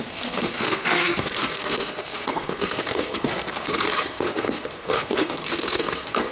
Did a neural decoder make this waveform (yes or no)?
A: yes